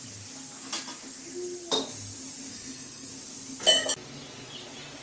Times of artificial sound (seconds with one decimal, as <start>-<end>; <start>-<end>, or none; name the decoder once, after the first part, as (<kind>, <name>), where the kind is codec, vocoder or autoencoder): 2.5-3.1 (codec, SNAC)

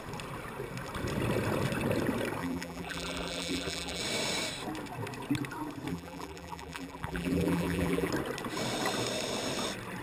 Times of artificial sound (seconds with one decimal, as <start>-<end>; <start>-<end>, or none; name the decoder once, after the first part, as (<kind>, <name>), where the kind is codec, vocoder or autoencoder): 2.4-4.0 (vocoder, BigVGAN v2); 5.9-8.1

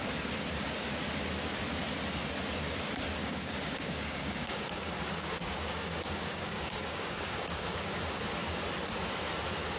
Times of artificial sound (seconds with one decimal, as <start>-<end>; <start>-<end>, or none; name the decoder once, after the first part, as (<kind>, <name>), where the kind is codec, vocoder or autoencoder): 3.2-8.2 (codec, DAC)